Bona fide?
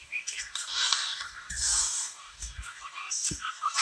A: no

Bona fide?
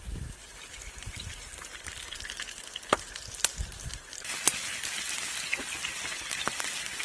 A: yes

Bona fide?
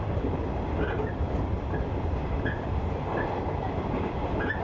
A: yes